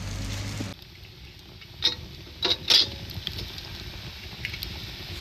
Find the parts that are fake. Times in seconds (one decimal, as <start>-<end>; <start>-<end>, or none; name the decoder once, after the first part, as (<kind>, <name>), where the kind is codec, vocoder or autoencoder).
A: none